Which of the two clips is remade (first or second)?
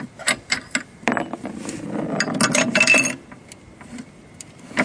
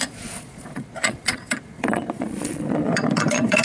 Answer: second